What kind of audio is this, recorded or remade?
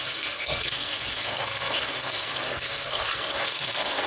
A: remade